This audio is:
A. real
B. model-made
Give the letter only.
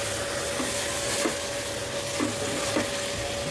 A